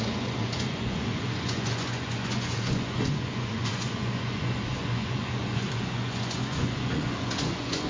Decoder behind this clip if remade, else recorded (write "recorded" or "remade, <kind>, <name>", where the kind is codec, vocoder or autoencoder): remade, vocoder, Vocos